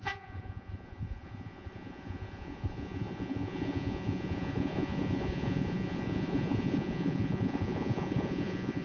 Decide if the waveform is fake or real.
fake